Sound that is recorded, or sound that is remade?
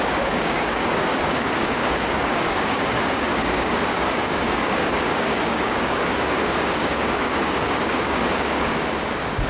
remade